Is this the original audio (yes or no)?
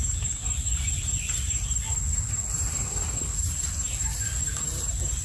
yes